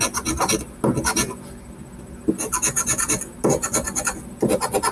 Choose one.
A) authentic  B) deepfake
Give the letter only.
A